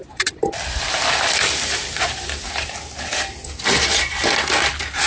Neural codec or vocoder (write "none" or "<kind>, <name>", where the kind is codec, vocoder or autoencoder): none